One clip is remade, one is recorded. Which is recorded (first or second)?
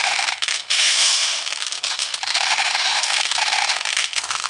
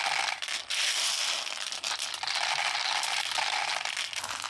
second